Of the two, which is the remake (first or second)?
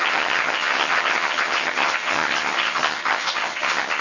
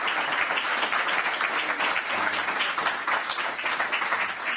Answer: first